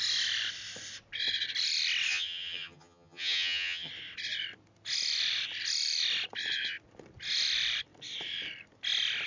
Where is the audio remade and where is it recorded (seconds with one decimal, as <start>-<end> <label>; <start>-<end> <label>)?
0.0-2.1 recorded; 2.1-3.9 remade; 3.9-9.3 recorded